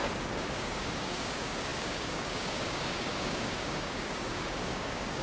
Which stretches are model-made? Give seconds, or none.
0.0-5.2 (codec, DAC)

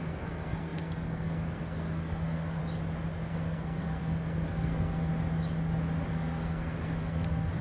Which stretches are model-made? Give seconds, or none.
0.0-2.6 (codec, SNAC); 3.3-5.1; 6.1-7.6

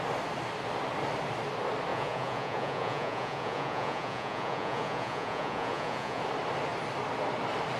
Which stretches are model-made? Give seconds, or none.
1.9-6.2 (vocoder, Vocos)

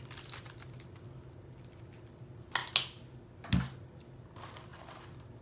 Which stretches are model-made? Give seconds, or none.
none